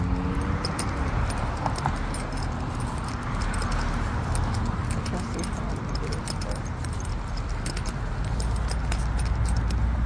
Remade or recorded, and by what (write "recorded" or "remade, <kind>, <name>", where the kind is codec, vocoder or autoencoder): recorded